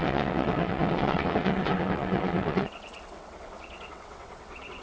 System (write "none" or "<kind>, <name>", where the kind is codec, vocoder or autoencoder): vocoder, WaveNeXt